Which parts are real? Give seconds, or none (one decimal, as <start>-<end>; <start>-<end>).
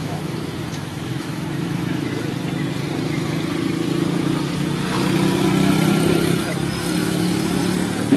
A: 2.1-7.0; 7.6-8.2